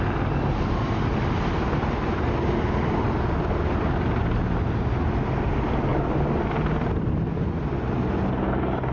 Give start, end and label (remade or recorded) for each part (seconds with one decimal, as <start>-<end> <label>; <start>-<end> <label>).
0.0-8.9 recorded